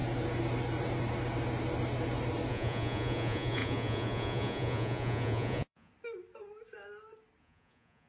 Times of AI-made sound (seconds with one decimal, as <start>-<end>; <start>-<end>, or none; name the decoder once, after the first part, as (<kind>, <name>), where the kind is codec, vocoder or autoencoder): 2.5-5.9 (vocoder, Vocos); 7.4-8.1